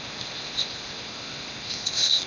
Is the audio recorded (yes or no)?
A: no